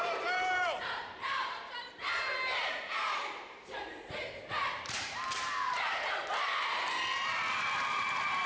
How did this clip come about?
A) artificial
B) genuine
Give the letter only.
A